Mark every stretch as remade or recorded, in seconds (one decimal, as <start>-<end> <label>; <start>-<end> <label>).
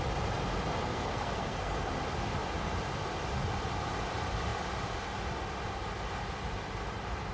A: 0.0-0.8 recorded; 0.8-1.9 remade; 1.9-7.3 recorded